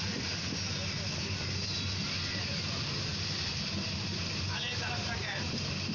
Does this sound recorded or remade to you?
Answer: recorded